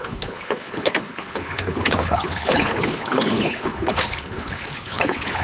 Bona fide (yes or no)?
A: no